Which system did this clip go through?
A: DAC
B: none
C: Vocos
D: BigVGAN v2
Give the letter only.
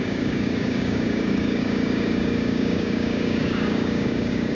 A